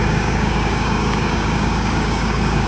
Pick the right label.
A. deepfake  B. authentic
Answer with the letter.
A